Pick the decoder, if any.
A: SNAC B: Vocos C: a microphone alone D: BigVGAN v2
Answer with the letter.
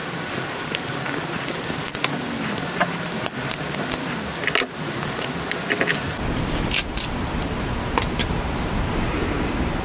C